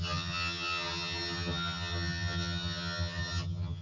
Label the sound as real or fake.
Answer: fake